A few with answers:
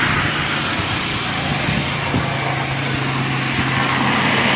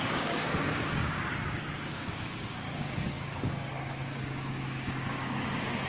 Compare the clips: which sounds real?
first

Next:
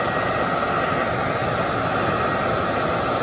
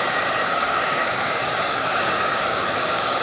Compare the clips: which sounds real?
first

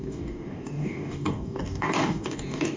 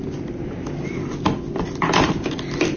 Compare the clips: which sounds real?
second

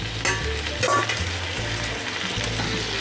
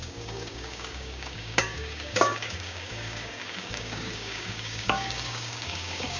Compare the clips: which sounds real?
first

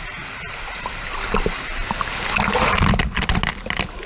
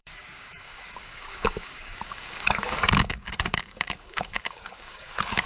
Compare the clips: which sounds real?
first